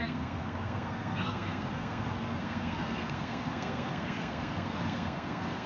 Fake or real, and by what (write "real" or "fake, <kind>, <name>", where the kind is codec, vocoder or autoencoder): fake, codec, SNAC